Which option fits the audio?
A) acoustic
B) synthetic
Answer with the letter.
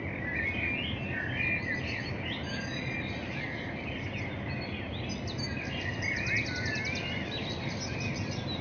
A